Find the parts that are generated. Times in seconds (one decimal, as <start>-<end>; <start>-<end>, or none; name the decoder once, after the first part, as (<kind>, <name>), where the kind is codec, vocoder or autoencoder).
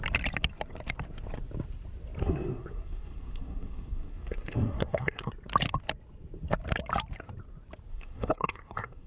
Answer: 2.2-5.3 (codec, SNAC); 7.9-9.1